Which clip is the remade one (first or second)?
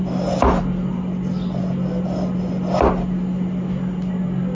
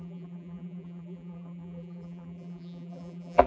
second